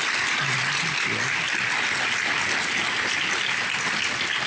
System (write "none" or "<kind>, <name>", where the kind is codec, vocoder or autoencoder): none